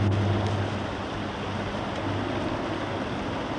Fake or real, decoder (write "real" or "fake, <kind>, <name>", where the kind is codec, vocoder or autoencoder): real